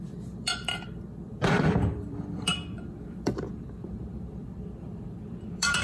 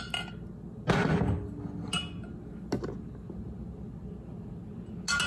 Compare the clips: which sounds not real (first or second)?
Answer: first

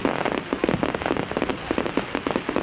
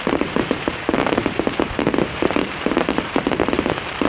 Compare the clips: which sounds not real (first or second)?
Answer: second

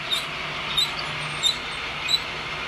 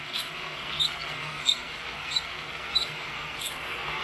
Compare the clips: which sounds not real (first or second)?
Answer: second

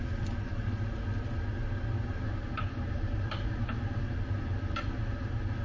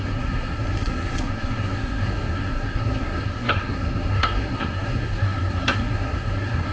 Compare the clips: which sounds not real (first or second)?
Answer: second